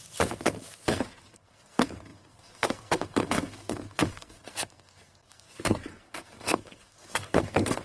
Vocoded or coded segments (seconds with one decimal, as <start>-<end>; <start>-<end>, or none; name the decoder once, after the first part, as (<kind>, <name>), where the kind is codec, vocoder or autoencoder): 0.0-7.8 (codec, SNAC)